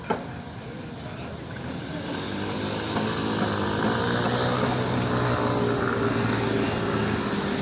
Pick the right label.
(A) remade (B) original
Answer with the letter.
B